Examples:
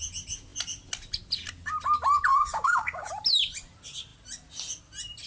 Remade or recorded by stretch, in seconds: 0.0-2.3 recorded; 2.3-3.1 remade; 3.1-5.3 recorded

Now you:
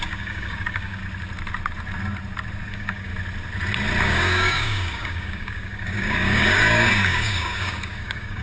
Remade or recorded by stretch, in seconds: 0.0-1.0 remade; 1.0-2.7 recorded; 2.7-3.1 remade; 3.1-4.0 recorded; 4.0-8.4 remade

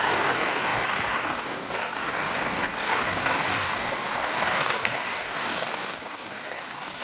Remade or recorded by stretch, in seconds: 0.0-7.0 remade

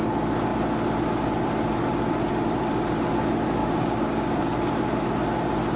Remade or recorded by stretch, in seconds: 0.0-3.6 recorded; 3.6-4.4 remade; 4.4-5.8 recorded

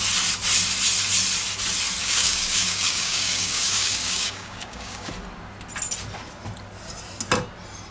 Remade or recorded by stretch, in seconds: 0.0-2.0 recorded; 2.0-5.1 remade; 5.1-7.9 recorded